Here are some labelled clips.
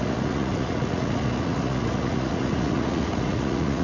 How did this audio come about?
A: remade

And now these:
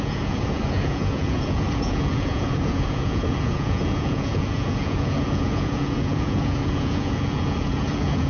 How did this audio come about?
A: remade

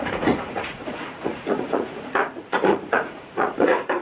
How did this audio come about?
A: remade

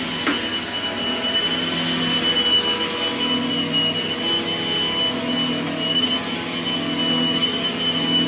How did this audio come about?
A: recorded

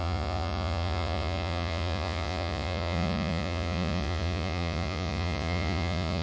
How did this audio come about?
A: remade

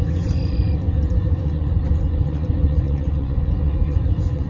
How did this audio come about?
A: remade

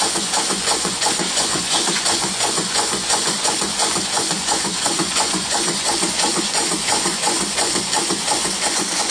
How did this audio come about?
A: remade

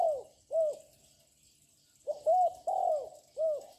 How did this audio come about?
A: recorded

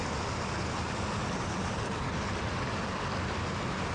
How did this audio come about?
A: recorded